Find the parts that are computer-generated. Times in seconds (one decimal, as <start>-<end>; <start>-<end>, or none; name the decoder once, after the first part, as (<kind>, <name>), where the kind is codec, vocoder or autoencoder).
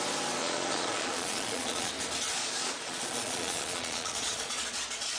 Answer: 0.4-1.9 (vocoder, Vocos); 2.3-5.2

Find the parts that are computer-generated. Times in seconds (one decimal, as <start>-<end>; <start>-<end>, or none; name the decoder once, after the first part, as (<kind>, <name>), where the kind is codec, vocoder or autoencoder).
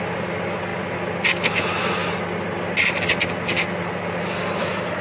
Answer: none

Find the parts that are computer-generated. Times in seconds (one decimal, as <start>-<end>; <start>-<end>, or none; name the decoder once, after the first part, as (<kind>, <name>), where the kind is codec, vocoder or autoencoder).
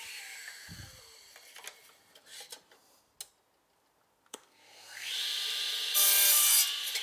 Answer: 4.3-5.1 (codec, SNAC)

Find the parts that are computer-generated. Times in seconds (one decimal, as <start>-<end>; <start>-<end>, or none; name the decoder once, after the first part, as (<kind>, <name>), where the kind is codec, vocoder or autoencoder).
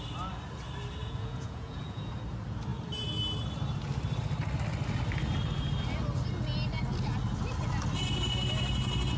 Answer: 1.0-2.1 (vocoder, Vocos)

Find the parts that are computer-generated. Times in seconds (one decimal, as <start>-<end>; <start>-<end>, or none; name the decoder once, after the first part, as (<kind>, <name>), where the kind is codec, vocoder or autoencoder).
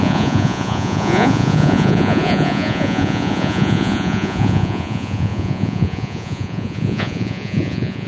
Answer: 0.0-8.1 (vocoder, Vocos)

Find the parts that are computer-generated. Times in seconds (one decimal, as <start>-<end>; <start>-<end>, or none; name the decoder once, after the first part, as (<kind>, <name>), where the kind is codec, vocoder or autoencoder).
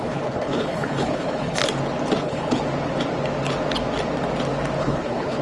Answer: 0.0-1.6 (codec, HILCodec); 2.2-2.6; 4.8-5.4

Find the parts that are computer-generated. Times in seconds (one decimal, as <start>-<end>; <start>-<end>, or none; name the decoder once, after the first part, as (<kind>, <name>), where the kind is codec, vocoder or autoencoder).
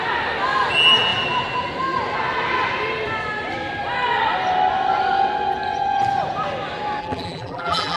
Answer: 7.0-8.0 (vocoder, BigVGAN v2)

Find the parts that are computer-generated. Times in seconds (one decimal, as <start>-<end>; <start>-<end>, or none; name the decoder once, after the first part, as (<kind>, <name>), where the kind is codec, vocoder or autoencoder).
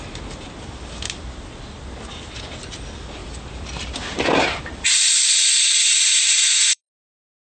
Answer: 3.2-6.8 (vocoder, BigVGAN v2)